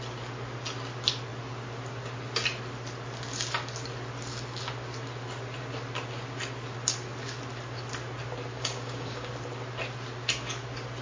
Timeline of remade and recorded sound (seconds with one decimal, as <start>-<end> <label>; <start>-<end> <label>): 0.0-8.5 recorded; 8.5-9.3 remade; 9.3-11.0 recorded